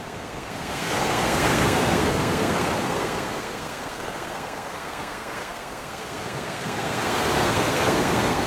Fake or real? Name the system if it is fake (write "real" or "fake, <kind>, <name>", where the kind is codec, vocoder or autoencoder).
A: fake, codec, SNAC